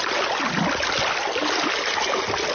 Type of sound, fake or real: real